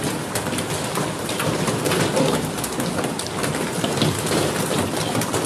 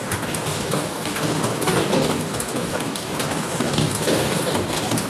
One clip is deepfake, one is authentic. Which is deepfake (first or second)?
second